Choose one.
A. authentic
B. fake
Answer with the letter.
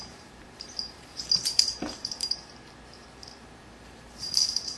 B